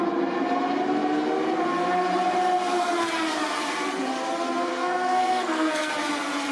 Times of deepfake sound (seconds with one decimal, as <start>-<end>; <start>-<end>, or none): 4.7-5.9